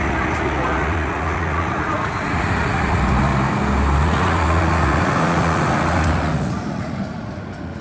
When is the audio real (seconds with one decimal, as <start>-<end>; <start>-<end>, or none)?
3.3-4.0